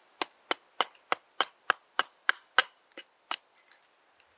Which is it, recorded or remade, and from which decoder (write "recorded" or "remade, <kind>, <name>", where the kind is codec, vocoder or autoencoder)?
recorded